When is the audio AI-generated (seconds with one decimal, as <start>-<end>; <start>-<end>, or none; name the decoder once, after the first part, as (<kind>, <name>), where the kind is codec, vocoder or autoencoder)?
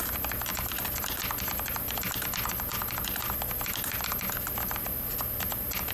none